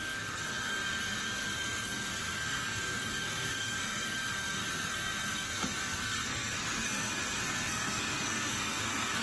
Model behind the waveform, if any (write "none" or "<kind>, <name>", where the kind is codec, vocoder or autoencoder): codec, SNAC